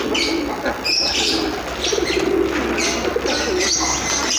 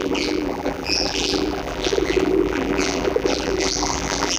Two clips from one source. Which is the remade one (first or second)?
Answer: second